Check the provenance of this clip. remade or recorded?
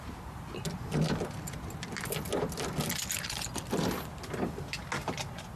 recorded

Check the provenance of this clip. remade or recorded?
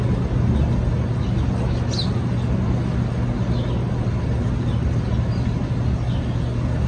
recorded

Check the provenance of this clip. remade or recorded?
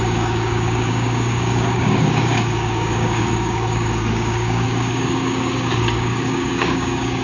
remade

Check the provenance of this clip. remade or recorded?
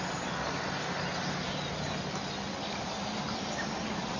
recorded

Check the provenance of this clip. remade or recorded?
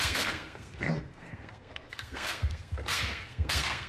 remade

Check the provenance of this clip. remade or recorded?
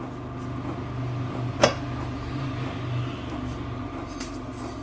recorded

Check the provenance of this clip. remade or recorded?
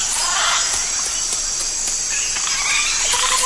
recorded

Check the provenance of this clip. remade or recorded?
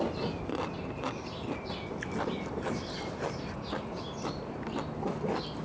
recorded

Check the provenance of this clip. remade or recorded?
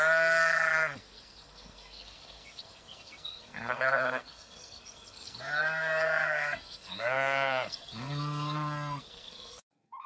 remade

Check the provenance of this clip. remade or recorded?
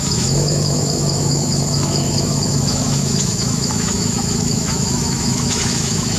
remade